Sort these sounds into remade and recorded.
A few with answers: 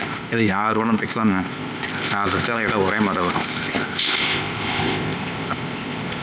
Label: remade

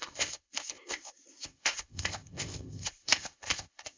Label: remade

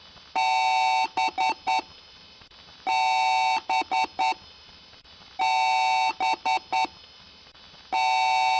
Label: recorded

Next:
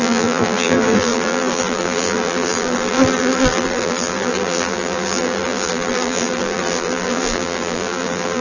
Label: remade